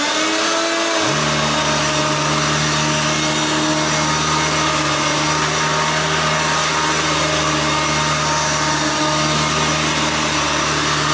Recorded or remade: recorded